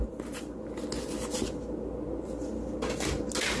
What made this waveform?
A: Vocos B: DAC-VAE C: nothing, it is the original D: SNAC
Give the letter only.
C